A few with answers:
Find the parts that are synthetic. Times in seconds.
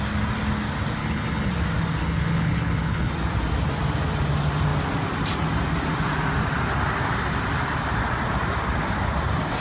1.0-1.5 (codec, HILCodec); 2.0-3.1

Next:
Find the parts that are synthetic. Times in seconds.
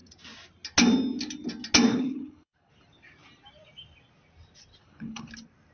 1.9-2.7 (codec, HILCodec); 4.8-5.3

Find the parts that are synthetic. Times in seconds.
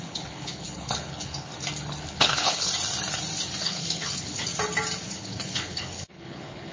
0.0-1.5 (codec, HILCodec); 2.0-2.7; 3.6-4.5; 5.1-6.7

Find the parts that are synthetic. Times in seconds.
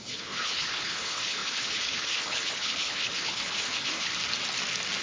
0.0-4.1 (codec, HILCodec)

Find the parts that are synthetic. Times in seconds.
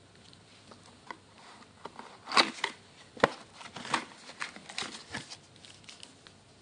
none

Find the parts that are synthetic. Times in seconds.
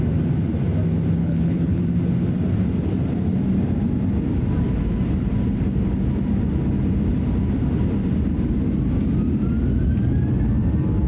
1.2-1.8 (codec, HILCodec)